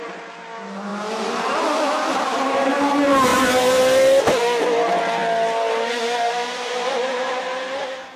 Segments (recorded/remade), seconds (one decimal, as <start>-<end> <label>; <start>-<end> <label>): 0.0-0.9 recorded; 0.9-2.7 remade; 2.7-8.2 recorded